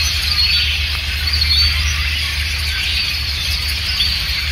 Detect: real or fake real